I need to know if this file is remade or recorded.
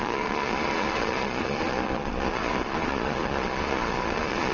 remade